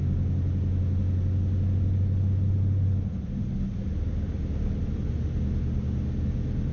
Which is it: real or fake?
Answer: real